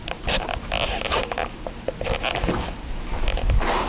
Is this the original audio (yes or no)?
yes